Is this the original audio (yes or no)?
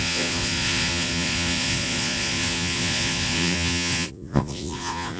no